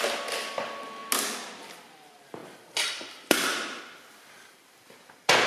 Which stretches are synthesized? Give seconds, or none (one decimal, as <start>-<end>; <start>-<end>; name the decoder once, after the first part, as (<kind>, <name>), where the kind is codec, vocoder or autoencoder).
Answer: 2.4-3.8 (vocoder, BigVGAN v2)